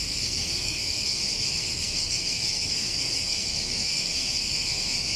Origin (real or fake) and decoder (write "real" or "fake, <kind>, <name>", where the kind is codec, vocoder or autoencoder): fake, codec, SNAC